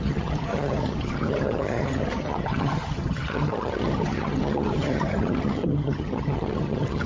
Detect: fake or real fake